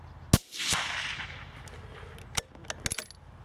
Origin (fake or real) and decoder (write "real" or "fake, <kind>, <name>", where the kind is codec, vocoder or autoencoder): real